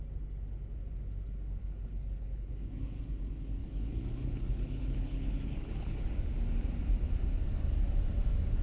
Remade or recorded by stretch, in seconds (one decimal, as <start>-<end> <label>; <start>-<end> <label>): 0.0-1.6 recorded; 1.6-2.8 remade; 2.8-3.6 recorded; 3.6-6.1 remade; 6.1-8.6 recorded